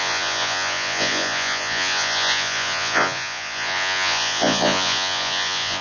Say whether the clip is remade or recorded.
remade